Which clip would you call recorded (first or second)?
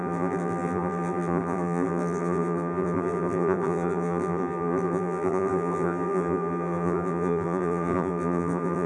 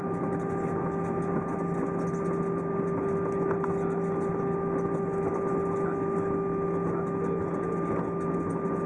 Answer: second